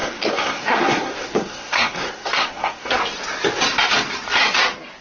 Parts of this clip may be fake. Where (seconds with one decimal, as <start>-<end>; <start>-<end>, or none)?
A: 0.0-3.0